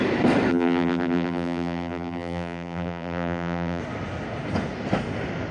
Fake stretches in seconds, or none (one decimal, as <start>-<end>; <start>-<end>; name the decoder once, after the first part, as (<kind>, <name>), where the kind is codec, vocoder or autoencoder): 0.5-3.8 (vocoder, BigVGAN v2)